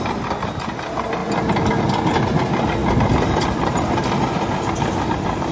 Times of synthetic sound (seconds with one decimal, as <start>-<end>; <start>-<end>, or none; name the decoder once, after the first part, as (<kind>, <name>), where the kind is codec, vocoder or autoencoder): none